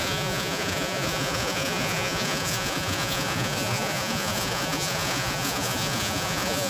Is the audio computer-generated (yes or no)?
yes